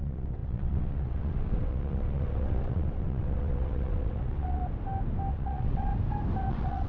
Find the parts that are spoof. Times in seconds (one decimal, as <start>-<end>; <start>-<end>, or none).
0.0-4.6; 5.3-5.9; 6.5-6.9